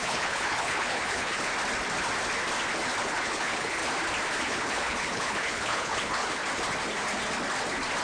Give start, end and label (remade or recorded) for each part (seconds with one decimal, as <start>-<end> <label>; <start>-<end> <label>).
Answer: 0.0-1.5 remade; 1.5-3.0 recorded; 3.0-3.8 remade; 3.8-4.4 recorded; 4.4-6.4 remade; 6.4-8.0 recorded